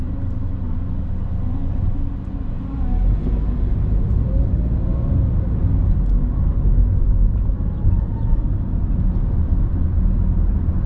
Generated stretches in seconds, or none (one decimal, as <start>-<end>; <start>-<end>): none